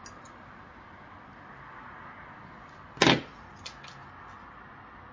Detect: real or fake real